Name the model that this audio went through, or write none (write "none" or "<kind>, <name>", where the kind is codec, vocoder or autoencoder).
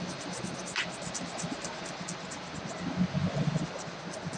none